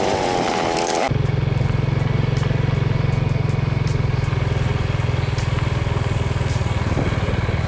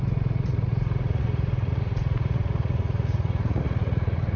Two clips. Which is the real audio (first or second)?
first